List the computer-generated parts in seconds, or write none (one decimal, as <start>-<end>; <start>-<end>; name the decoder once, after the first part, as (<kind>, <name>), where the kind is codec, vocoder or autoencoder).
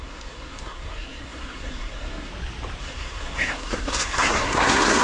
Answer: 0.0-2.3 (codec, SNAC); 2.8-5.0